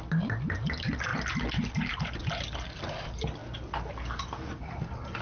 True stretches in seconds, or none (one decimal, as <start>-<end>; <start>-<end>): 0.0-5.2